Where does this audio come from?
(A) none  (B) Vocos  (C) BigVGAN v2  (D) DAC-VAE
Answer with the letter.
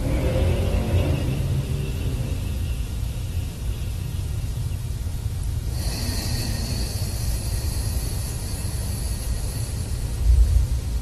C